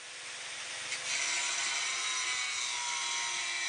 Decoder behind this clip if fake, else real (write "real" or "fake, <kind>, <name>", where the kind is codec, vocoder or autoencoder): real